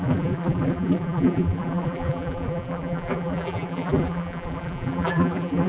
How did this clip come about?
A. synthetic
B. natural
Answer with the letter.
A